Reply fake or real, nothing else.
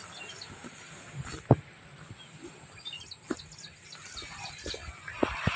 real